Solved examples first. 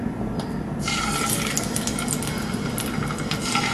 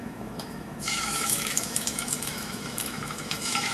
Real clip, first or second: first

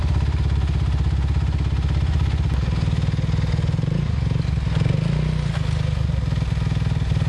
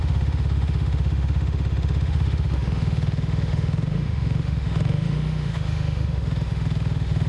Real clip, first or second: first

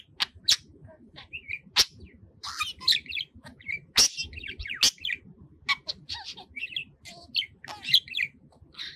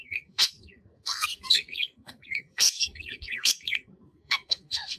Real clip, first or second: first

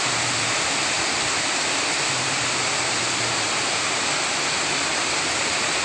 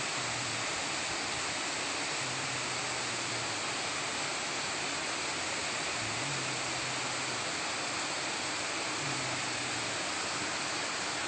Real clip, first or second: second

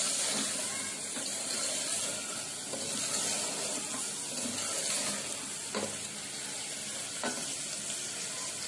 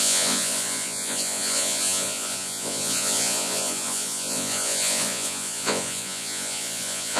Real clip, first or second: first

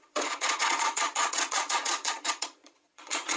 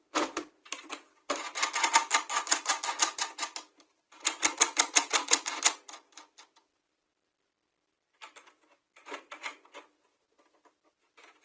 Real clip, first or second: second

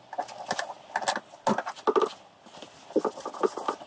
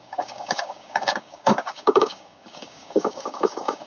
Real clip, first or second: first